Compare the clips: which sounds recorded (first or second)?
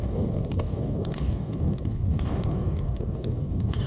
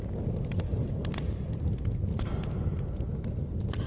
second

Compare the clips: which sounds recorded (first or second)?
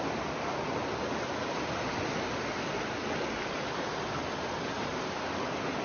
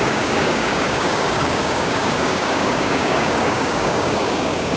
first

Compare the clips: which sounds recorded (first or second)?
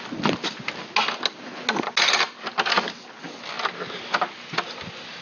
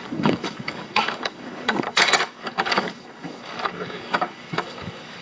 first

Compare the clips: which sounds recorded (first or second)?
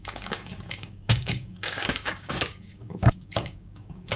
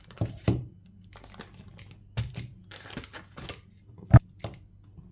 second